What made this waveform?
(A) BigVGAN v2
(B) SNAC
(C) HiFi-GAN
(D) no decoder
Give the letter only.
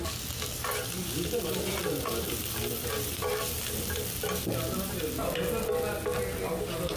D